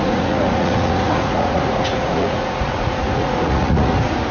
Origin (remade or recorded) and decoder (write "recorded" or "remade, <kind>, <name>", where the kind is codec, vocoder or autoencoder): remade, vocoder, Vocos